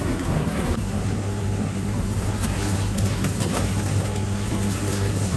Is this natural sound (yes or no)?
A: no